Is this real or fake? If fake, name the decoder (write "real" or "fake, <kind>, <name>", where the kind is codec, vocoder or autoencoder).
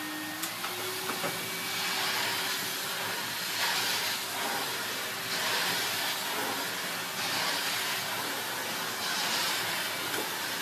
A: real